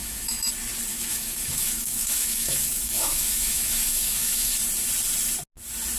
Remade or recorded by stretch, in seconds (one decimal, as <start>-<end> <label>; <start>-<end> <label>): 0.0-0.5 remade; 0.5-0.9 recorded; 0.9-4.5 remade; 4.5-6.0 recorded